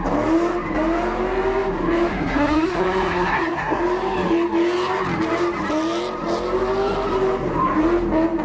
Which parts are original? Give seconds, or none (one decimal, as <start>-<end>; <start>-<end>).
0.0-2.1; 3.8-8.4